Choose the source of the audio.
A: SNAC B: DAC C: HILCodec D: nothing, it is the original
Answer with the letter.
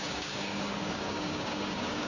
B